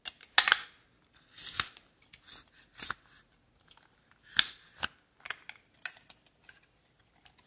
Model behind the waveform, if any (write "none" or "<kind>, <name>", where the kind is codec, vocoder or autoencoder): none